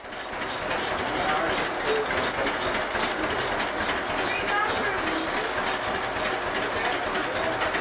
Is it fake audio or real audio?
real